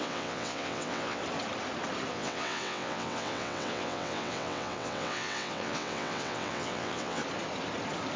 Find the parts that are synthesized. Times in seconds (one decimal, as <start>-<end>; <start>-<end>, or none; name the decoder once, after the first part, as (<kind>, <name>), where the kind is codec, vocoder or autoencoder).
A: 0.0-1.2 (vocoder, WaveNeXt); 2.1-7.2